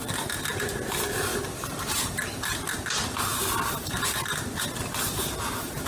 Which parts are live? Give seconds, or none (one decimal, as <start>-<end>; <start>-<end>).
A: 0.0-1.3; 2.4-5.9